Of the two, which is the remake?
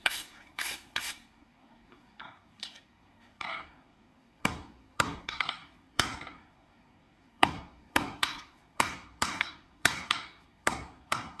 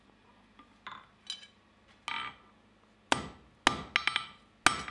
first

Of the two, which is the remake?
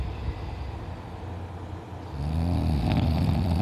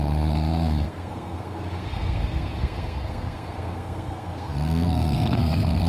second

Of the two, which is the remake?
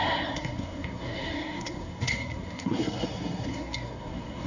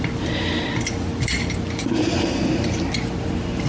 first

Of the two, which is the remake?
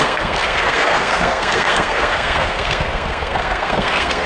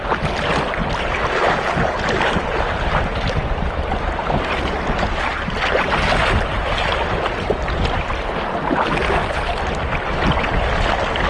first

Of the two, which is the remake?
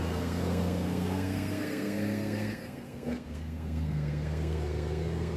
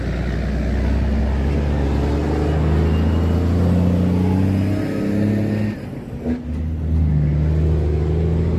first